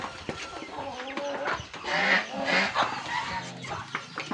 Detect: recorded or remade recorded